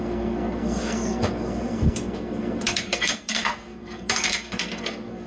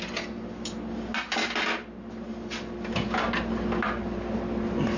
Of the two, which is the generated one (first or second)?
first